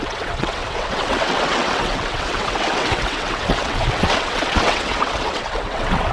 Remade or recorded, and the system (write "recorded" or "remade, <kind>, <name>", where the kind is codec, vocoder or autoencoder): remade, vocoder, WaveNeXt